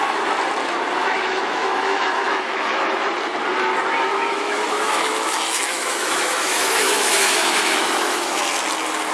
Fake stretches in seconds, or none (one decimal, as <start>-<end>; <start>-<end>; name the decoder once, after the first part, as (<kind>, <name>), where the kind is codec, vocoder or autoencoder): 1.0-3.1 (autoencoder, DAC-VAE); 4.1-8.4